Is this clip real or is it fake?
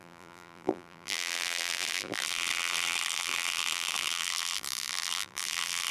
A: fake